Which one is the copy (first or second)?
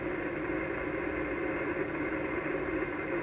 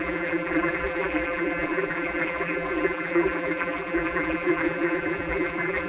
second